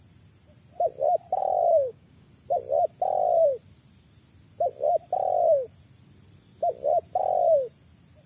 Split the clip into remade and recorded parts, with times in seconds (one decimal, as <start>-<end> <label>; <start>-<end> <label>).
0.0-1.4 recorded; 1.4-2.3 remade; 2.3-8.3 recorded